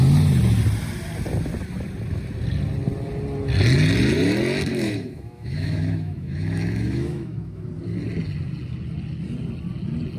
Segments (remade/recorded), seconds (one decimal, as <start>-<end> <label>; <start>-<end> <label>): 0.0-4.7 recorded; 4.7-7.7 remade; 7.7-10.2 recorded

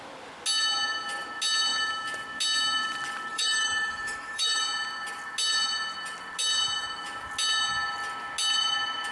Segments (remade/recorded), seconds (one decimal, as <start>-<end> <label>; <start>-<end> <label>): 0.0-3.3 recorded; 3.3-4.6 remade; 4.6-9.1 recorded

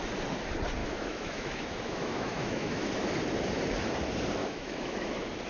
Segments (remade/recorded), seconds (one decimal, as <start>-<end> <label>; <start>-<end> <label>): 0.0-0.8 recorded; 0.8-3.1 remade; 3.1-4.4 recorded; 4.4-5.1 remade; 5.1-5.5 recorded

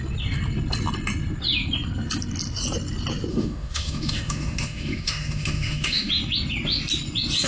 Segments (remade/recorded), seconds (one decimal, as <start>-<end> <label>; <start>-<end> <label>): 0.0-3.3 recorded; 3.3-6.1 remade; 6.1-7.5 recorded

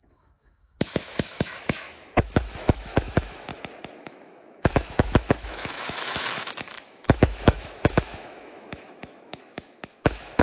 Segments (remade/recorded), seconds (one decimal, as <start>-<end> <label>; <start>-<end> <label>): 0.0-3.5 remade; 3.5-4.0 recorded; 4.0-10.4 remade